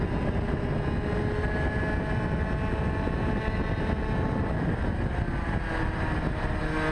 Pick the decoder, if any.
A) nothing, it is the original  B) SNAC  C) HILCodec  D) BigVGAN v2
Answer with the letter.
A